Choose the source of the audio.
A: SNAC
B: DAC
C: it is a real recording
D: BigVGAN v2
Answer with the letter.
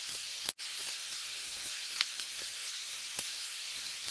A